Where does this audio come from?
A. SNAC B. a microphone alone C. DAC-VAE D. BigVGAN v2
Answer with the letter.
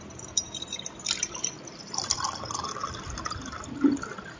D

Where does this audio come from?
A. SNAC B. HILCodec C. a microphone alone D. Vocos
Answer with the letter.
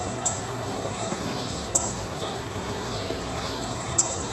A